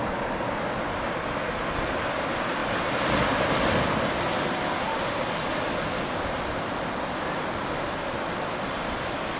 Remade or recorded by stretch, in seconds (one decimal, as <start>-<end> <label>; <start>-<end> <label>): 0.0-9.4 recorded